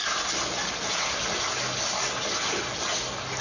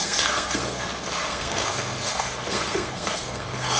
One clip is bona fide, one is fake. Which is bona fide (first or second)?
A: first